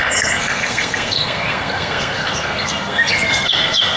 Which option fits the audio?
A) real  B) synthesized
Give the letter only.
B